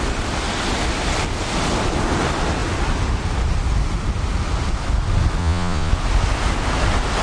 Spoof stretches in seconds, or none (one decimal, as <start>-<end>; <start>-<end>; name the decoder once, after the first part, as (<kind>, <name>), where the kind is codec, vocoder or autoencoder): 5.4-5.9 (vocoder, Vocos)